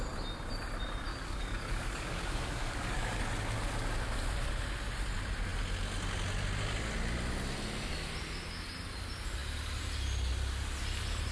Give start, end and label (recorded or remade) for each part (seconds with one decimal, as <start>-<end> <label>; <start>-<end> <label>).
0.0-1.1 recorded; 1.1-3.2 remade; 3.2-11.3 recorded